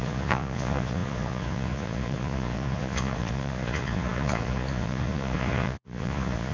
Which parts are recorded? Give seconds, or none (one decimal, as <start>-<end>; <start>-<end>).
none